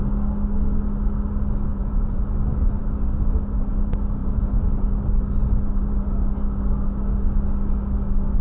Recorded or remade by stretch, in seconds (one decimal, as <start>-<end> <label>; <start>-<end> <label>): 0.0-1.7 recorded; 1.7-2.3 remade; 2.3-4.2 recorded; 4.2-4.9 remade; 4.9-8.4 recorded